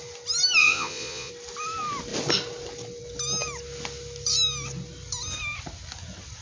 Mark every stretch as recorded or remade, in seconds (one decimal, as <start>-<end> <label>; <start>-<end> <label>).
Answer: 0.0-0.6 recorded; 0.6-1.3 remade; 1.3-6.4 recorded